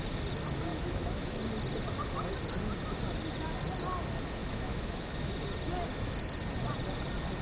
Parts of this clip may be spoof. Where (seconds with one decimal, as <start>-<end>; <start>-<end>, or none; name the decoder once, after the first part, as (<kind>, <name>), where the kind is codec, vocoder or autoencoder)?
0.7-1.4 (autoencoder, DAC-VAE); 4.4-5.3